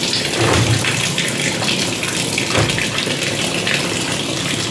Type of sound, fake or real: real